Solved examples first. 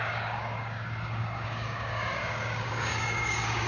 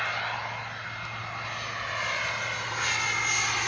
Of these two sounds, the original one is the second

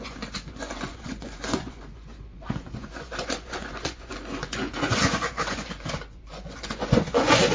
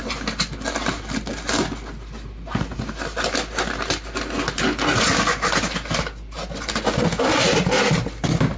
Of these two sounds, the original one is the second